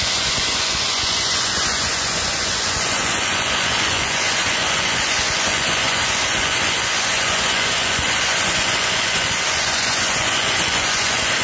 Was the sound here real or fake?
fake